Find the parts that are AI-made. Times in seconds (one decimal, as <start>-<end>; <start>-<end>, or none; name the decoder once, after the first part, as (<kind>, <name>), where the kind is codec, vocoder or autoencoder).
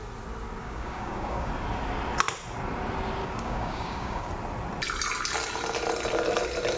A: 0.6-1.5 (codec, DAC); 3.2-4.3